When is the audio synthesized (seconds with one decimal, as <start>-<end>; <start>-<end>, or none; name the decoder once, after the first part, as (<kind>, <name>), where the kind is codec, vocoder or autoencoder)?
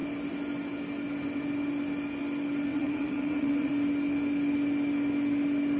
2.7-3.7 (vocoder, WaveNeXt)